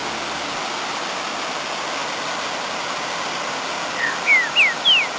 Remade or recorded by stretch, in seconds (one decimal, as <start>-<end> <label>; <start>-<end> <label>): 0.0-5.2 recorded